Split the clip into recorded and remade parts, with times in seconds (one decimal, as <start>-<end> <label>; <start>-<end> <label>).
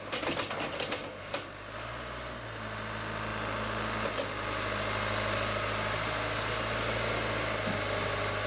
0.0-8.5 recorded